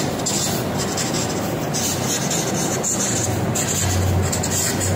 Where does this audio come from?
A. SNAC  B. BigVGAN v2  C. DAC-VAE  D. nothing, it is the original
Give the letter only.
D